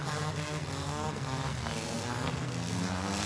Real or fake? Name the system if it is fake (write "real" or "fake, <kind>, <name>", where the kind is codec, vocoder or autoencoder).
fake, codec, SNAC